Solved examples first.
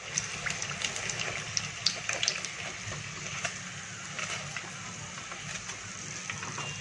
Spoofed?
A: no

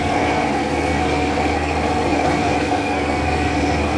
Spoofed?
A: yes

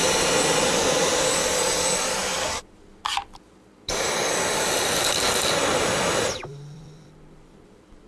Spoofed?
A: yes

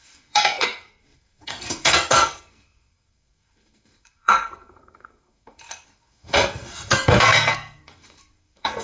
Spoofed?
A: yes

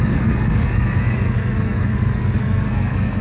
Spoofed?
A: yes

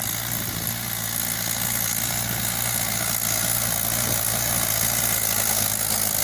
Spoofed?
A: no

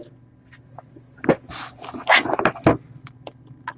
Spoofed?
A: no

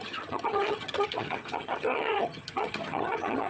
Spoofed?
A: yes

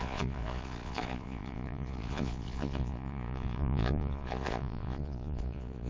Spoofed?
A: yes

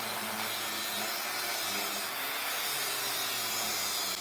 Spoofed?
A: no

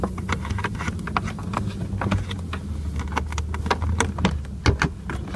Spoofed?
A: no